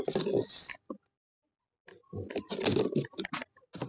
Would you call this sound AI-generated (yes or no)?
no